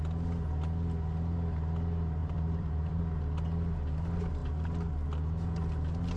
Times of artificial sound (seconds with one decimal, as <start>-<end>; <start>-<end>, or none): 2.2-3.0